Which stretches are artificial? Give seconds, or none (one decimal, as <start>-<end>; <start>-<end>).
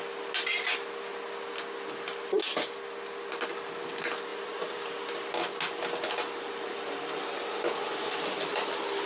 4.3-4.9